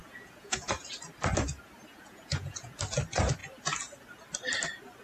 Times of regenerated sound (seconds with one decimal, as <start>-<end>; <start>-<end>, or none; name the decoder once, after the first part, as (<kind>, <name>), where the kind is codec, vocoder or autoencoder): 0.0-0.9 (vocoder, Vocos); 1.9-2.7